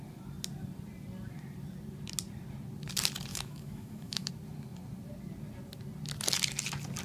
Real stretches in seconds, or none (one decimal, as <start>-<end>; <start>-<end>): 0.0-3.3; 4.3-7.0